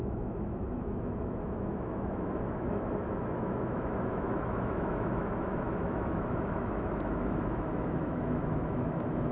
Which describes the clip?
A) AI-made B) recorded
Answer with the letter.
A